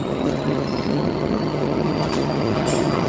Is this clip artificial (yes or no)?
yes